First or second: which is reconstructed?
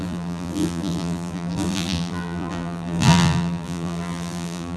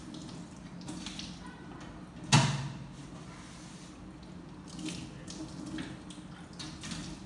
first